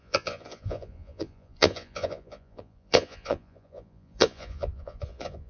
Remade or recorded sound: remade